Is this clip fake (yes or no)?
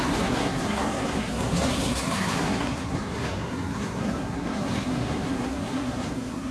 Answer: yes